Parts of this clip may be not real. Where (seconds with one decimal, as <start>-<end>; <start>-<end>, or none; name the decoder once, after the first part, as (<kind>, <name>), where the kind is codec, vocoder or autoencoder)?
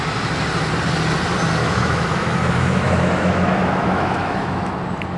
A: 1.6-4.7 (autoencoder, DAC-VAE)